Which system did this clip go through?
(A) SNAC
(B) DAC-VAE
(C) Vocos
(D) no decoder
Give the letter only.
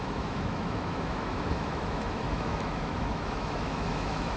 B